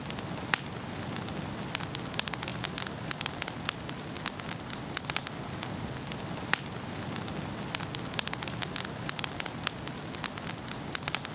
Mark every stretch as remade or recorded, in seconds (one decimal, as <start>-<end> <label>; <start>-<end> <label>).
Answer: 0.0-11.3 recorded